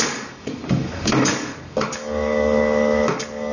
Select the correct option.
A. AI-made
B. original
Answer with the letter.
A